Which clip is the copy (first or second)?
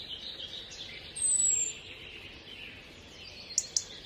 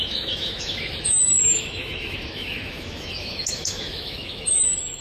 second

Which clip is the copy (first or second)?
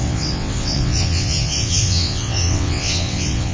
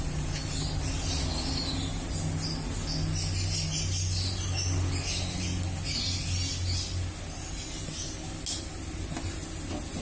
first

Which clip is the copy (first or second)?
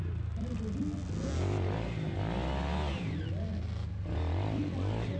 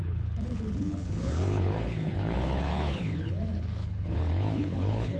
second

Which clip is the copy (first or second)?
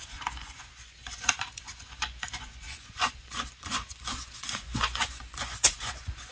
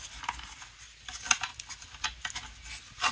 first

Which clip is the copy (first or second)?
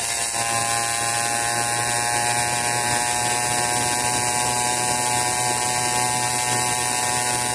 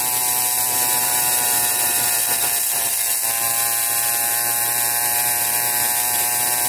second